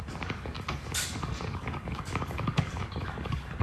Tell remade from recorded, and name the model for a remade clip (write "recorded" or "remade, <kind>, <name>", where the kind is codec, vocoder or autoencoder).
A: remade, codec, DAC